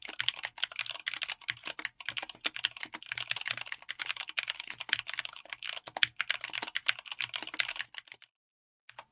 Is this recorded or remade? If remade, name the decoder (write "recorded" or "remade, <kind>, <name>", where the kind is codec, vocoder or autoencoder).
recorded